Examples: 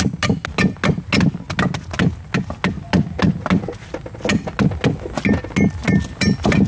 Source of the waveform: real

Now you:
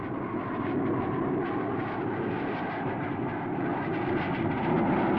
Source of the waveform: real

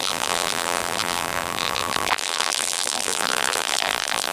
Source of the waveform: fake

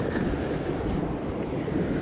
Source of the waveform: real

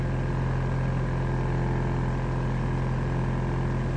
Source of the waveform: real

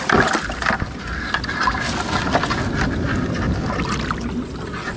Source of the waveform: real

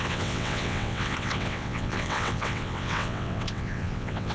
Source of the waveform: fake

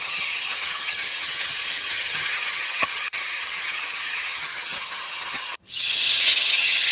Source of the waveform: fake